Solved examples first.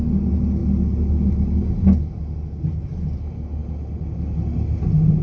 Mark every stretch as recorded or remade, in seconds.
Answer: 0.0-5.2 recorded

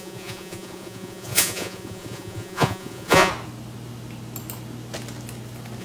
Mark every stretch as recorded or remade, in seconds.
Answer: 0.0-3.3 remade; 3.3-5.8 recorded

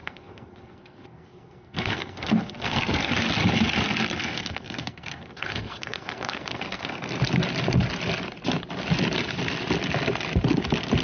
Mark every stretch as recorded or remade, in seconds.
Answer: 0.0-3.1 remade; 3.1-4.2 recorded; 4.2-7.1 remade; 7.1-11.0 recorded

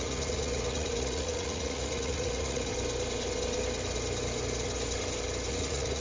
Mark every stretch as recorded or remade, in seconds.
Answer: 0.0-2.7 remade; 2.7-5.5 recorded; 5.5-6.0 remade